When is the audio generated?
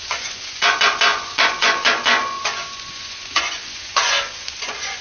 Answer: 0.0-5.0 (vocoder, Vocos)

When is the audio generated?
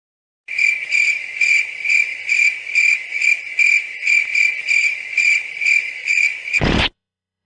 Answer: 6.0-7.5 (vocoder, Vocos)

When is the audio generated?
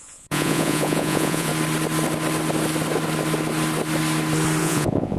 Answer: 0.0-1.5 (vocoder, Vocos); 4.6-5.2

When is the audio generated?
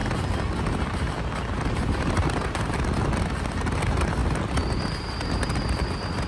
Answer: none